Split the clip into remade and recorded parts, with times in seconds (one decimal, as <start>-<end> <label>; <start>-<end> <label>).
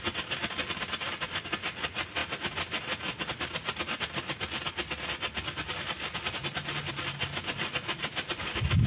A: 0.0-8.9 recorded